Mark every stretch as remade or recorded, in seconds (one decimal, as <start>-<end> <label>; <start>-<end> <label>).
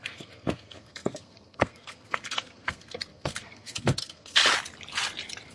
0.0-4.4 remade; 4.4-5.5 recorded